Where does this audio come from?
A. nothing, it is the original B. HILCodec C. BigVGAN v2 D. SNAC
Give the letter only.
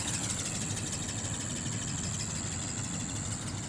A